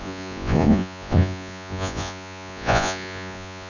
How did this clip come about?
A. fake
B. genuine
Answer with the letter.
A